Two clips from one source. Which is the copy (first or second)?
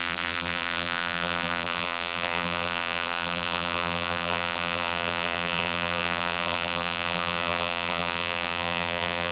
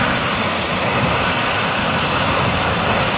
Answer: first